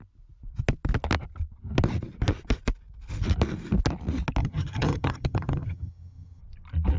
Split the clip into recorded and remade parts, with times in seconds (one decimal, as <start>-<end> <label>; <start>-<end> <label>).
0.0-4.4 recorded; 4.4-6.4 remade; 6.4-7.0 recorded

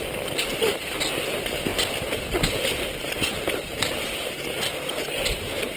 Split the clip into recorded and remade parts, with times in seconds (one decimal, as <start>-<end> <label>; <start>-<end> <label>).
0.0-5.8 recorded